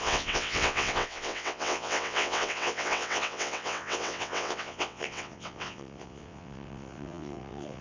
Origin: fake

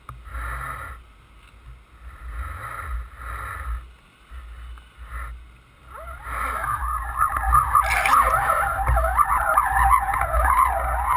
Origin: real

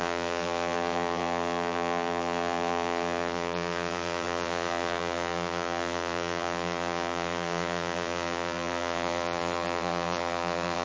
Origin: fake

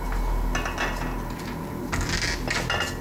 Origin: real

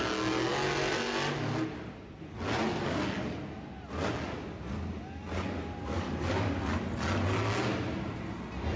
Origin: real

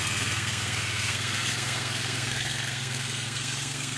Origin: fake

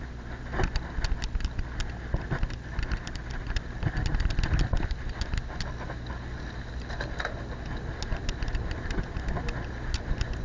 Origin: real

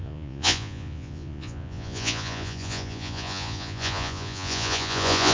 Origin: fake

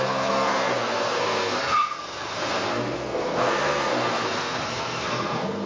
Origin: fake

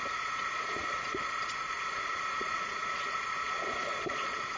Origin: fake